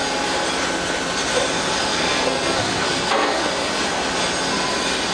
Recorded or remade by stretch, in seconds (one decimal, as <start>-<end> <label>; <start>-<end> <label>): 0.0-1.9 recorded; 1.9-3.5 remade; 3.5-5.1 recorded